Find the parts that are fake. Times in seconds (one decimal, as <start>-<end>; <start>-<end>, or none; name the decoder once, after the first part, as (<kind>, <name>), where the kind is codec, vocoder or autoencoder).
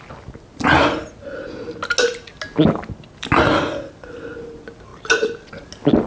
none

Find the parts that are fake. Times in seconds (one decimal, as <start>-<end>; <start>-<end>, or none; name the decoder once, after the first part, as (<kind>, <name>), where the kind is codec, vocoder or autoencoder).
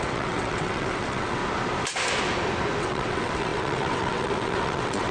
0.0-1.4 (vocoder, WaveNeXt); 2.8-5.1